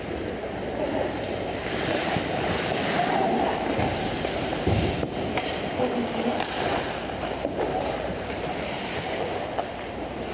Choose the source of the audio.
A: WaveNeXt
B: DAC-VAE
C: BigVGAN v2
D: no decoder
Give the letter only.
C